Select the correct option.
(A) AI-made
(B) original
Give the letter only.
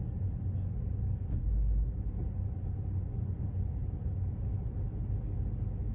B